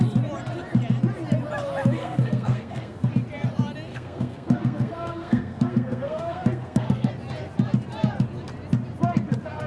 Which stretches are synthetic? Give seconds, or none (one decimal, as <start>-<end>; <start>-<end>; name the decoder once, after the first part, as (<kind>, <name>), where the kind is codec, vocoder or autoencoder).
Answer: 2.0-3.1 (codec, SNAC); 3.9-7.1